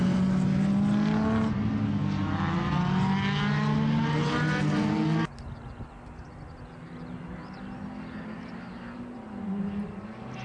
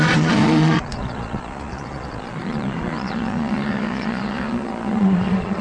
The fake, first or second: second